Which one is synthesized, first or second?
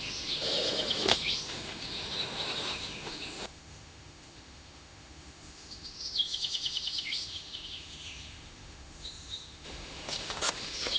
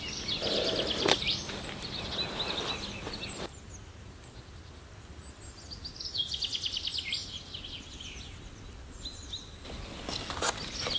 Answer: first